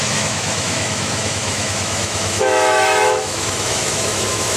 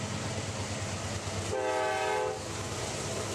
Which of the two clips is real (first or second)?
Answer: second